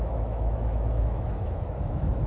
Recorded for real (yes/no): no